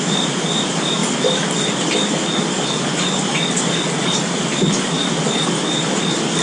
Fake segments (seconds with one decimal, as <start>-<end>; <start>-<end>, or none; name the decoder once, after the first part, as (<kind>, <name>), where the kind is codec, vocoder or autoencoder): none